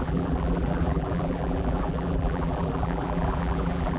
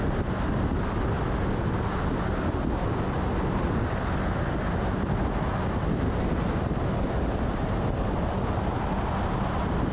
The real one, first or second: second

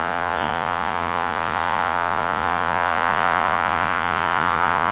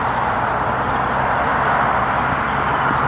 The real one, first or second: second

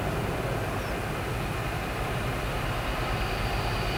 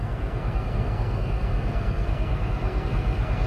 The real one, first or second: first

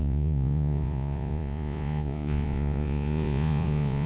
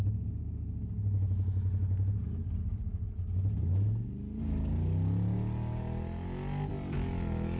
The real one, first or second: second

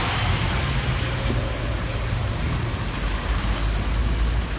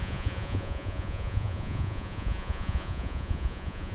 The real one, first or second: first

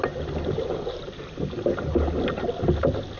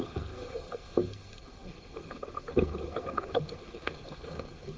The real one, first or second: first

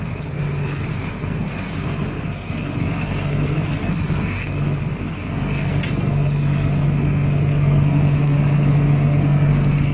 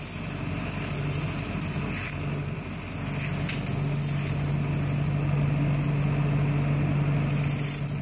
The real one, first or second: second